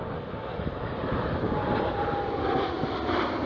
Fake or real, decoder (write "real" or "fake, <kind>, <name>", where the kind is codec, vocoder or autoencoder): real